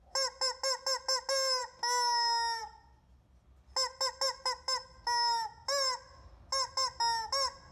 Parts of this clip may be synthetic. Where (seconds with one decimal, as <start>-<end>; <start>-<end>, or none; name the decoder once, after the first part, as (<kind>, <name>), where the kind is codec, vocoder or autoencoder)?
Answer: none